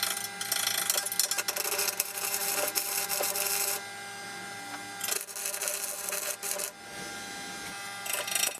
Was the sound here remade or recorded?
recorded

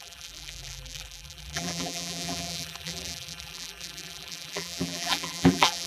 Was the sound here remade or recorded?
remade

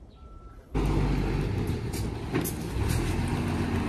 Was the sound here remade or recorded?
recorded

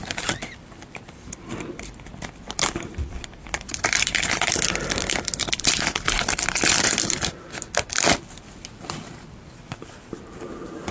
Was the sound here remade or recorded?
remade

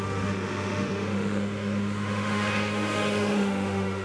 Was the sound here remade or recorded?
remade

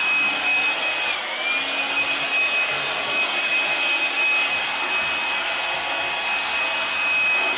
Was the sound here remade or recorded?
recorded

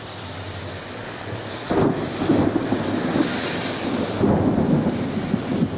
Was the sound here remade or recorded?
recorded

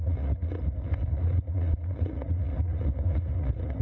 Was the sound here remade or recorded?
remade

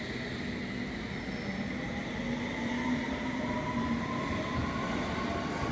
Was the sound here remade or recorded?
recorded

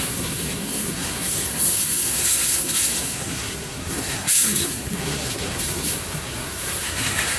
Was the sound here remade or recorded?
remade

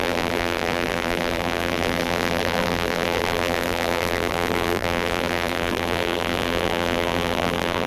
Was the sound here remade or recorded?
remade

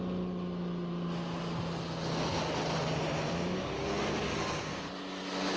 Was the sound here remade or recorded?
recorded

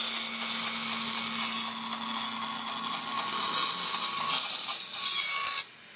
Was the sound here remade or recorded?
recorded